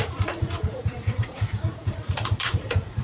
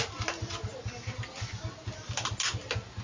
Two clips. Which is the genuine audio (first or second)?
second